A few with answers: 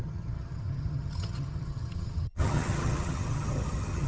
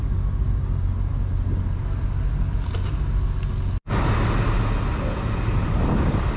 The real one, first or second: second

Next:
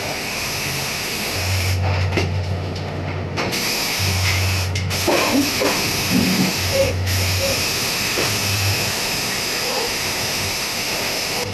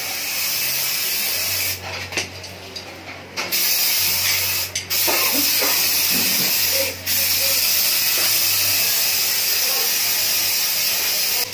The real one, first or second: second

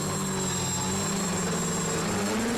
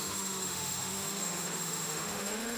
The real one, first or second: first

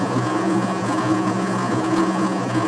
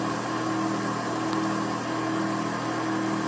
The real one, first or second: second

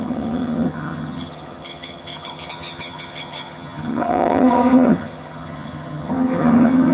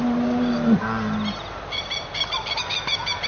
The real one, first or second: second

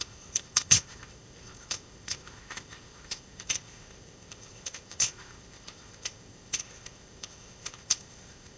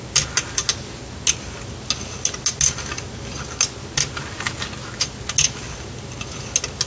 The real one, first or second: second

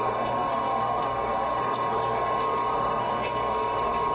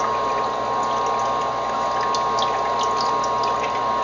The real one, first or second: second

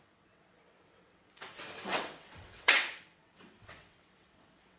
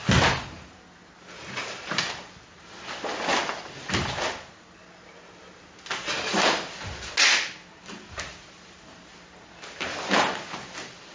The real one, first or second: second